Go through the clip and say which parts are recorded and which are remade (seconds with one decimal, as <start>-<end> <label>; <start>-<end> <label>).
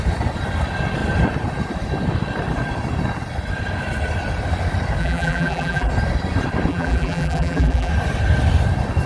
0.0-5.0 recorded; 5.0-5.9 remade; 5.9-6.7 recorded; 6.7-7.9 remade; 7.9-9.1 recorded